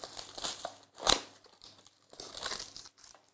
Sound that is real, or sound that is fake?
real